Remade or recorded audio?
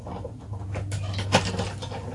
recorded